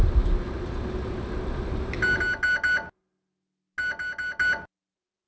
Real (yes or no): yes